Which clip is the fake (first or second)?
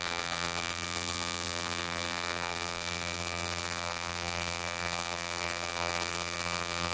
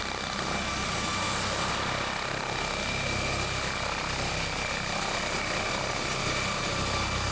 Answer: first